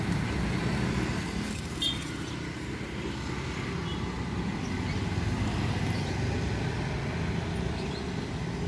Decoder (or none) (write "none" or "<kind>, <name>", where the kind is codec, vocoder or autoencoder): none